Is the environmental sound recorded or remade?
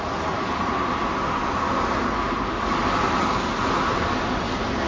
recorded